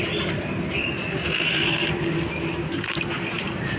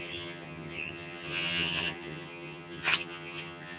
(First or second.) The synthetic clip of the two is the second